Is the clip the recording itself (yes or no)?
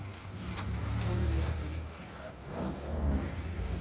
no